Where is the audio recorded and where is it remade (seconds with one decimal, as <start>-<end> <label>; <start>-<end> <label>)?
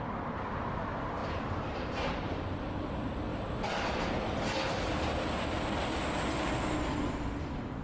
0.0-1.2 recorded; 1.2-2.9 remade; 2.9-3.3 recorded; 3.3-4.0 remade; 4.0-7.8 recorded